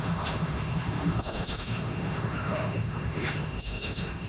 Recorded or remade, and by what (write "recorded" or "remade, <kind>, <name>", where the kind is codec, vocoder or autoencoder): remade, autoencoder, DAC-VAE